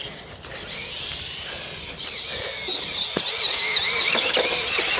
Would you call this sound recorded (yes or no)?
yes